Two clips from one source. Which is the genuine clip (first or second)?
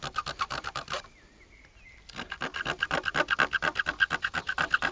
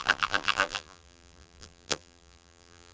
first